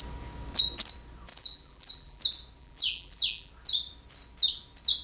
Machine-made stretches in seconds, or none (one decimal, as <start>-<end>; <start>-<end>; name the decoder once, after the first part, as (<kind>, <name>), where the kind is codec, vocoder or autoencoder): 1.3-2.2 (vocoder, BigVGAN v2); 2.6-3.5